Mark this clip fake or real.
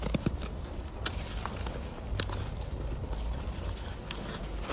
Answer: real